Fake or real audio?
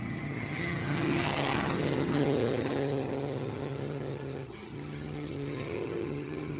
fake